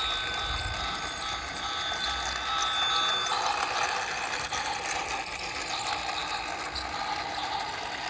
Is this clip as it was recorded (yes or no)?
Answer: yes